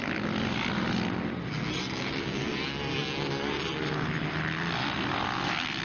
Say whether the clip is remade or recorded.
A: recorded